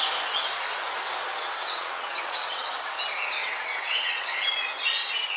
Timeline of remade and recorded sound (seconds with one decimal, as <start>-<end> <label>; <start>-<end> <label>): 0.0-1.3 recorded; 1.3-2.7 remade; 2.7-3.4 recorded; 3.4-4.3 remade; 4.3-5.4 recorded